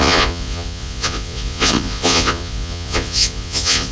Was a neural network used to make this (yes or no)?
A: yes